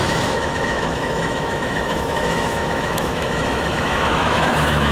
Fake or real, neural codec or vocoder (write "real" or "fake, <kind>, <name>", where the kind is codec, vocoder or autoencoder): fake, autoencoder, DAC-VAE